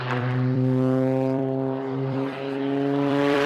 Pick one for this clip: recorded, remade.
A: remade